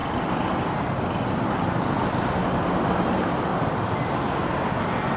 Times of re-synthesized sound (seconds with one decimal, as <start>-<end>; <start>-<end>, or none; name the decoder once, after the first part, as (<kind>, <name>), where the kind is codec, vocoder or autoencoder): 1.2-3.5 (vocoder, BigVGAN v2)

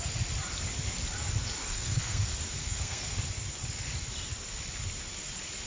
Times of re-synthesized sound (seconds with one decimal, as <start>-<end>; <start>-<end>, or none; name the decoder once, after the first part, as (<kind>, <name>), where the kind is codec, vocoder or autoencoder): 1.6-2.2 (codec, SNAC); 2.6-3.2

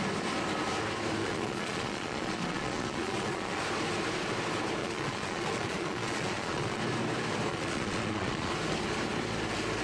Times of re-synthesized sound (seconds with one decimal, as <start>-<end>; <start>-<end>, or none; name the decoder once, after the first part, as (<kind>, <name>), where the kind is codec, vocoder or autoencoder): 1.2-3.6 (vocoder, Vocos); 4.8-6.8; 7.5-8.5

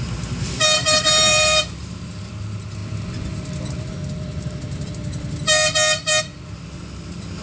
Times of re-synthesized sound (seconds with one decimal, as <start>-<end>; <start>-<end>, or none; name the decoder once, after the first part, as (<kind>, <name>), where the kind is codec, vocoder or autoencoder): 0.8-1.6 (vocoder, BigVGAN v2)

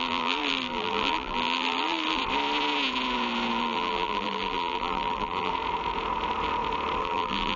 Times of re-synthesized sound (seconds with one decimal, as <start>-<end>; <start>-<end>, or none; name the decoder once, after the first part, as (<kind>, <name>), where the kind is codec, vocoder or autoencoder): 0.0-2.2 (vocoder, BigVGAN v2); 3.6-5.5; 7.0-7.6

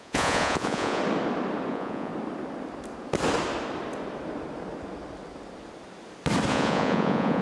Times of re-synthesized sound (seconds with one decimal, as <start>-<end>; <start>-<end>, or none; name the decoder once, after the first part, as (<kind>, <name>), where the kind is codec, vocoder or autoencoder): 0.0-1.0 (vocoder, Vocos); 1.7-2.1; 6.5-7.4

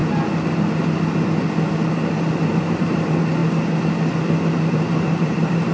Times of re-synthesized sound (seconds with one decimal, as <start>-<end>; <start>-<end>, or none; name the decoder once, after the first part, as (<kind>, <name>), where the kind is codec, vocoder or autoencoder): 2.6-3.4 (vocoder, BigVGAN v2); 4.6-5.7

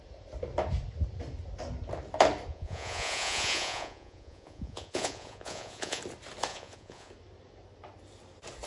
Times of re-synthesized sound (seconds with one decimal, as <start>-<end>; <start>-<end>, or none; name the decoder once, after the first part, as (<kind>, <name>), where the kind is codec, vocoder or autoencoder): 2.5-6.0 (vocoder, Vocos); 6.5-7.1